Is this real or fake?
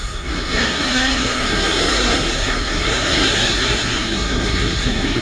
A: fake